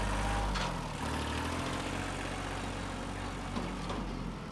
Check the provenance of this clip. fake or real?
real